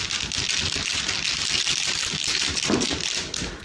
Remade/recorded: recorded